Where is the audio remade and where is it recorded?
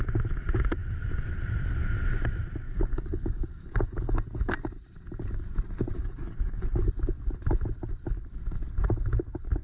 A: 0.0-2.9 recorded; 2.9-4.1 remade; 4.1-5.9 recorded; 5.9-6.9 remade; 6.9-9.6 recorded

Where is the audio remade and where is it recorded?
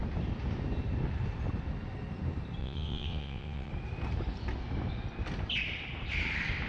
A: 0.0-2.6 recorded; 2.6-3.7 remade; 3.7-6.7 recorded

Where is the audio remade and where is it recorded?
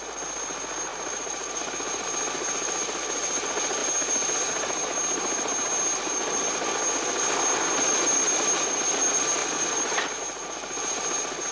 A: 0.0-0.9 recorded; 0.9-1.7 remade; 1.7-11.5 recorded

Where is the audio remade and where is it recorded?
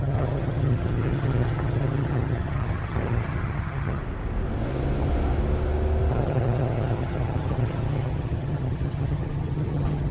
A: 0.0-4.0 remade; 4.0-6.1 recorded; 6.1-10.1 remade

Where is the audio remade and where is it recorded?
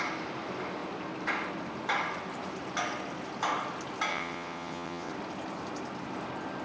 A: 0.0-4.1 recorded; 4.1-5.1 remade; 5.1-6.6 recorded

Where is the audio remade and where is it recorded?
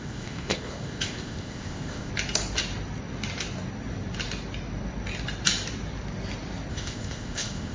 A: 0.0-2.1 remade; 2.1-6.7 recorded; 6.7-7.7 remade